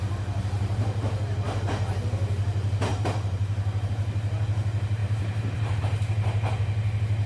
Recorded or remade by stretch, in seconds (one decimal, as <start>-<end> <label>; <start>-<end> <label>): 0.0-2.9 recorded; 2.9-3.9 remade; 3.9-5.0 recorded; 5.0-5.8 remade; 5.8-7.3 recorded